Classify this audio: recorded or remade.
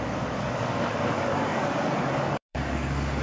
remade